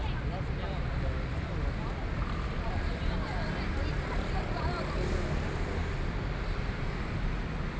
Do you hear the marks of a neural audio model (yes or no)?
no